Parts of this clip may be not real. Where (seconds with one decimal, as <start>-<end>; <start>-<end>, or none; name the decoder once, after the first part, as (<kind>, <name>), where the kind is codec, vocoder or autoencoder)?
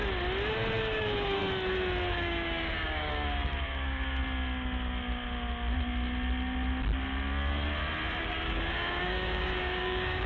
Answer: 0.8-1.4 (codec, DAC); 2.1-4.2; 8.2-10.3